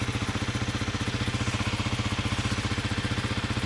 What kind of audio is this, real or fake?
real